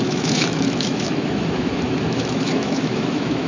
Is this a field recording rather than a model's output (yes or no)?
no